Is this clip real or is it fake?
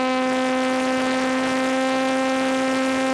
real